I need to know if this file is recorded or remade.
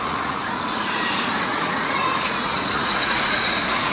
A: remade